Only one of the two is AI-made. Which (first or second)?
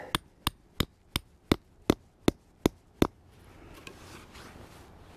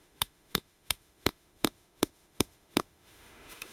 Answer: second